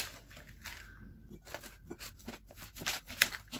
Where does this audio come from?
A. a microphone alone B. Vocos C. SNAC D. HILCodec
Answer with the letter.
A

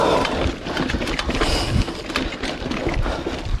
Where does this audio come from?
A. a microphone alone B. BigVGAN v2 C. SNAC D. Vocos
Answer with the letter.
A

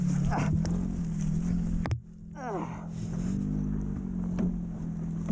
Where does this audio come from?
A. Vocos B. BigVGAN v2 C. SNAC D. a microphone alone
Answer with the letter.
D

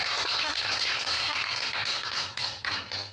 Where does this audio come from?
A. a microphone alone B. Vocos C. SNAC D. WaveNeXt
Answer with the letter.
C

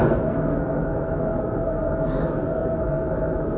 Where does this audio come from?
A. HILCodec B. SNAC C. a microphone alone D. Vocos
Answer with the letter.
B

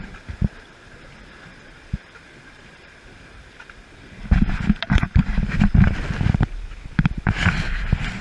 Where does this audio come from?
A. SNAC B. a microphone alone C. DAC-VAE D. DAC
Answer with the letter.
B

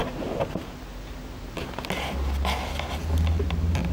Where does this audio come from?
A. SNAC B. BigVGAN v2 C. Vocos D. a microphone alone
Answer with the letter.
D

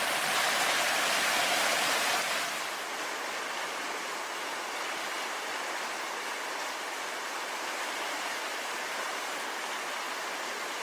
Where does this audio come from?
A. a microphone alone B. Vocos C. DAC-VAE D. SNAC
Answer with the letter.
A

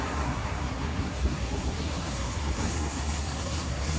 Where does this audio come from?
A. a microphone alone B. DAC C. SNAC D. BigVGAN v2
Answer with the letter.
C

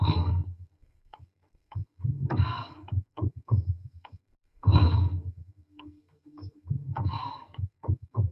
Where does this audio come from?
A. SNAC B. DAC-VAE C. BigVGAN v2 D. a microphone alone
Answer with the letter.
A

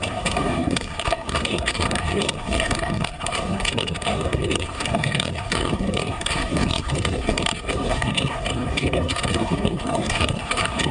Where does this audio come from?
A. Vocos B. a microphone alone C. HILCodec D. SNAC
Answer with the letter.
D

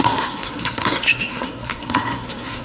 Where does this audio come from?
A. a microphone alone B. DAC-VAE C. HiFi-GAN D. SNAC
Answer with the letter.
D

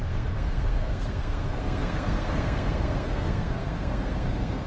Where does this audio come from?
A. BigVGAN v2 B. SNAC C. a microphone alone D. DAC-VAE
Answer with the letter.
B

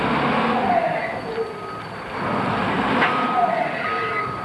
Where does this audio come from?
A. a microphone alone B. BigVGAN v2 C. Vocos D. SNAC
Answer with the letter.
A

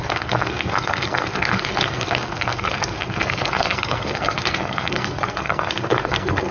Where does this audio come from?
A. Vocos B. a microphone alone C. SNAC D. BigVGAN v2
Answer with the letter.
C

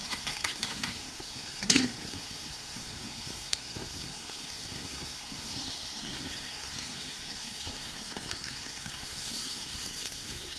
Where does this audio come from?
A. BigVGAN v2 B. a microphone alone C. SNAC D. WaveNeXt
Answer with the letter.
C